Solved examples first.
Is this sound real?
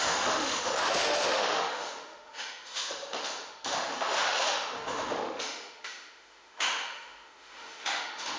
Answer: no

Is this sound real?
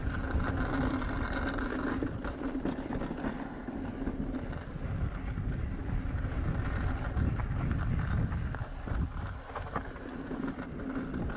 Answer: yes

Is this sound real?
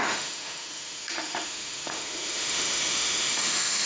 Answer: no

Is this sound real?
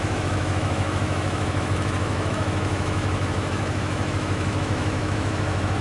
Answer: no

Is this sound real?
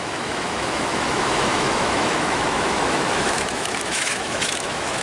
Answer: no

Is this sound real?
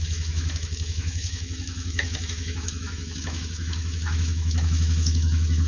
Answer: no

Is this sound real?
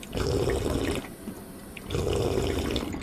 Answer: yes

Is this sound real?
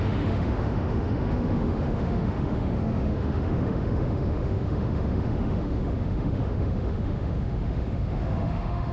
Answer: no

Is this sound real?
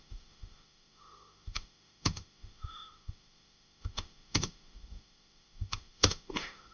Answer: no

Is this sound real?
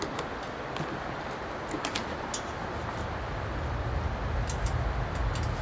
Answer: yes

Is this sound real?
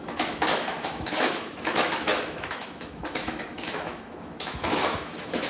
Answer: no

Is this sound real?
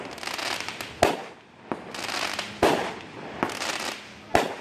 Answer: yes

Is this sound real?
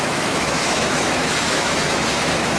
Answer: no